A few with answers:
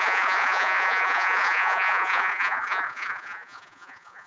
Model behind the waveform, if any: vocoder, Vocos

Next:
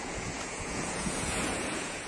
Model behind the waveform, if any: vocoder, Vocos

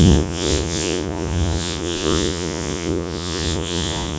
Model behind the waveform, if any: vocoder, Vocos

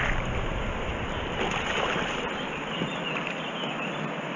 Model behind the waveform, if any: none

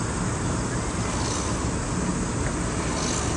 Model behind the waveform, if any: none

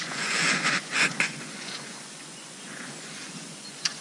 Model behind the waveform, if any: vocoder, Vocos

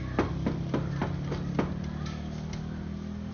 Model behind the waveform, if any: none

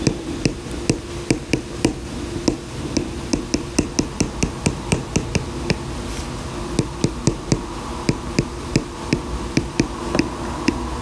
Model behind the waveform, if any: none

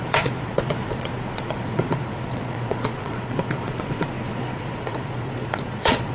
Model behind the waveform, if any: vocoder, Vocos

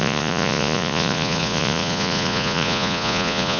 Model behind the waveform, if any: vocoder, Vocos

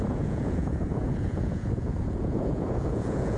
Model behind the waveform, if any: vocoder, Vocos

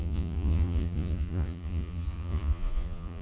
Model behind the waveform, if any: vocoder, Vocos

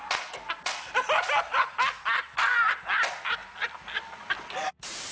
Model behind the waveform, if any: none